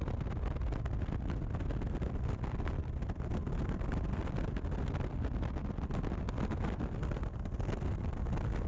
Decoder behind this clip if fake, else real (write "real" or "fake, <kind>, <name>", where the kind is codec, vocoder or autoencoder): real